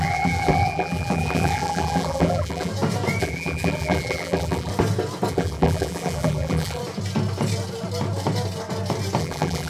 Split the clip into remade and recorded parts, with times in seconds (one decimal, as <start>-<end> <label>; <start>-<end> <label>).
0.0-2.7 remade; 2.7-3.2 recorded; 3.2-4.7 remade; 4.7-5.3 recorded; 5.3-6.8 remade; 6.8-9.2 recorded; 9.2-9.7 remade